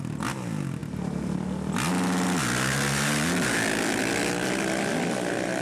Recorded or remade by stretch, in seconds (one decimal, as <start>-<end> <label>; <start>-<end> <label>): 0.0-5.6 recorded

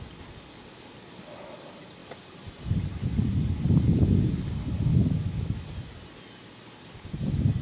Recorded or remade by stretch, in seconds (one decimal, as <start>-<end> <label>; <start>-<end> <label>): 0.0-4.9 recorded; 4.9-5.6 remade; 5.6-7.6 recorded

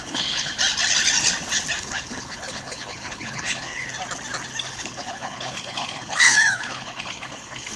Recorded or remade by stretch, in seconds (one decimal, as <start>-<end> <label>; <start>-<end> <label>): 0.0-0.5 remade; 0.5-1.8 recorded; 1.8-3.9 remade; 3.9-4.7 recorded; 4.7-7.8 remade

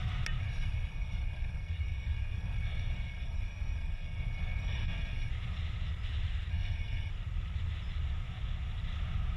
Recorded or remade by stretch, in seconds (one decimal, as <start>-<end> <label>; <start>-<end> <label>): 0.0-0.4 recorded; 0.4-5.3 remade; 5.3-6.5 recorded; 6.5-7.1 remade; 7.1-9.4 recorded

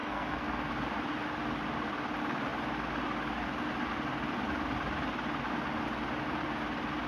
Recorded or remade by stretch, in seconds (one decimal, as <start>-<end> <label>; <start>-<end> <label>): 0.0-0.7 remade; 0.7-7.1 recorded

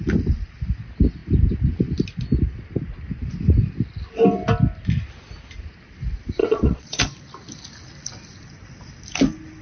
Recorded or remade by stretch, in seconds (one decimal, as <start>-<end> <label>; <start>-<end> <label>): 0.0-6.4 recorded; 6.4-7.0 remade; 7.0-9.6 recorded